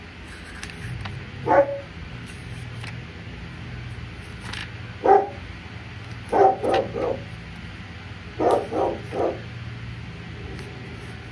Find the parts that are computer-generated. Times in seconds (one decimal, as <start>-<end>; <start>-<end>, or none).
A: 1.7-2.9